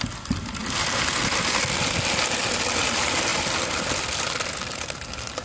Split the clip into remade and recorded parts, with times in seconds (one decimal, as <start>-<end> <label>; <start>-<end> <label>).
0.0-5.4 recorded

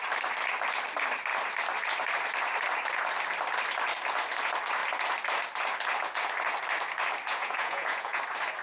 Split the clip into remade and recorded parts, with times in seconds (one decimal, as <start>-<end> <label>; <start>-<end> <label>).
0.0-7.3 recorded; 7.3-8.2 remade; 8.2-8.6 recorded

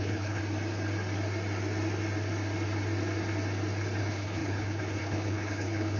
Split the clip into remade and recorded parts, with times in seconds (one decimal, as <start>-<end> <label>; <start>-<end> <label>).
0.0-0.4 remade; 0.4-4.0 recorded; 4.0-6.0 remade